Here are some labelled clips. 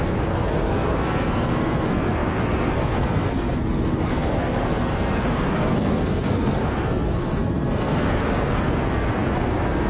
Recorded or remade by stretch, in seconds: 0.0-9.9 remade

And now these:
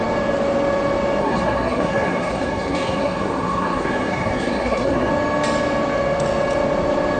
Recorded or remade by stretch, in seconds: 0.0-1.2 recorded; 1.2-5.1 remade; 5.1-7.2 recorded

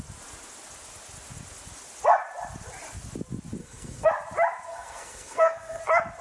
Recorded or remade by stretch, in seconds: 0.0-3.6 recorded; 3.6-4.1 remade; 4.1-4.7 recorded; 4.7-5.8 remade; 5.8-6.2 recorded